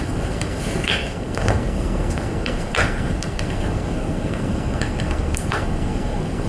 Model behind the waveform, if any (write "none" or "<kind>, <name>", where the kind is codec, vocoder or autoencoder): codec, SNAC